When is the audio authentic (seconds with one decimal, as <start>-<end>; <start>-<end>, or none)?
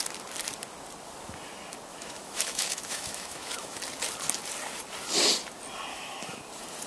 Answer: 0.0-1.9; 3.8-5.9; 6.4-6.9